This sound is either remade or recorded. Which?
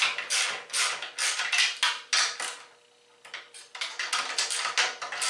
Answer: recorded